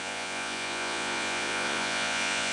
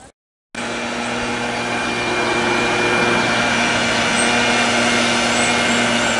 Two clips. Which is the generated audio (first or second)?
first